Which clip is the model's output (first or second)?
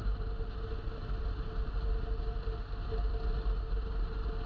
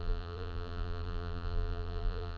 second